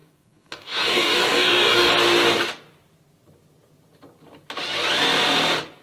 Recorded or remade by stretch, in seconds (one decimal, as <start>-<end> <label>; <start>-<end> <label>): 0.0-1.9 remade; 1.9-5.8 recorded